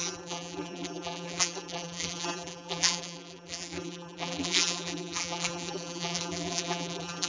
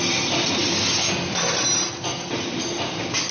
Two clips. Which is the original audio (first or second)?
second